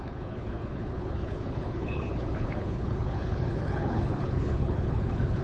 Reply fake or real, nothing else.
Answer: fake